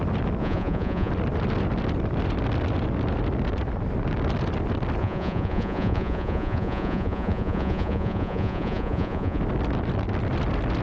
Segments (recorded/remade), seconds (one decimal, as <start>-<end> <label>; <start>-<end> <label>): 0.0-0.4 recorded; 0.4-1.1 remade; 1.1-5.0 recorded; 5.0-9.4 remade; 9.4-10.8 recorded